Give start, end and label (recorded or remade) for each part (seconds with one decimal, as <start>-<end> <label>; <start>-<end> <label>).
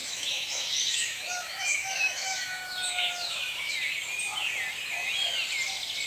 0.0-3.7 remade; 3.7-6.1 recorded